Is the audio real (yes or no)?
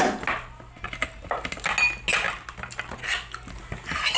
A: yes